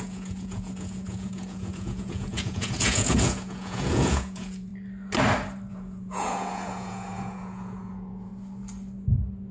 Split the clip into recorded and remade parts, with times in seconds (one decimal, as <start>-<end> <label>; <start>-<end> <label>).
0.0-4.7 remade; 4.7-5.7 recorded; 5.7-8.3 remade; 8.3-9.5 recorded